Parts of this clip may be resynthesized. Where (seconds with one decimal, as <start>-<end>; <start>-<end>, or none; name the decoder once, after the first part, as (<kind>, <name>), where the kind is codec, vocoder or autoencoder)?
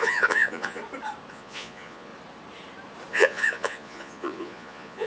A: 0.0-0.8 (vocoder, Vocos); 1.3-2.1; 3.1-5.1